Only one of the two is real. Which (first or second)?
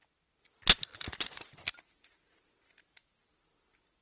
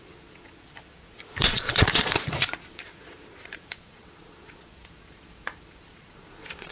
first